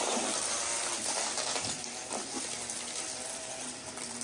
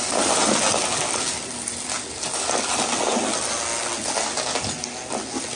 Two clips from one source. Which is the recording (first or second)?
second